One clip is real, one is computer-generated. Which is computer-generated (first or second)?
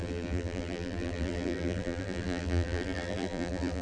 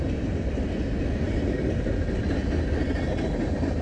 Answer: first